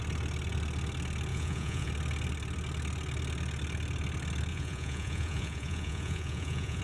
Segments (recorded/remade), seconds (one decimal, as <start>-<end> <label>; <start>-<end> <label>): 0.0-1.3 recorded; 1.3-1.9 remade; 1.9-4.5 recorded; 4.5-6.8 remade

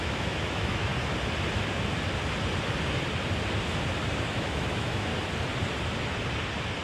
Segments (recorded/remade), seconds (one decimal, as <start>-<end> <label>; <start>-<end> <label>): 0.0-0.9 remade; 0.9-4.3 recorded; 4.3-5.1 remade; 5.1-6.8 recorded